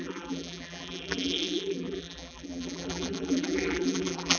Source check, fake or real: fake